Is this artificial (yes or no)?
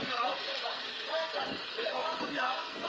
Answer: yes